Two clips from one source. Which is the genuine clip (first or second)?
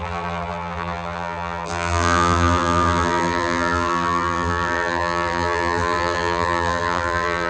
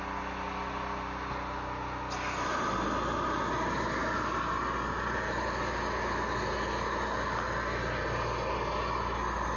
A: second